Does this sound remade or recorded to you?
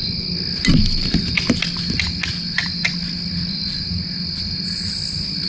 recorded